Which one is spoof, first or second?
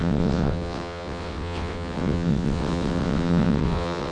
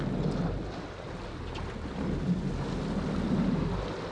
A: first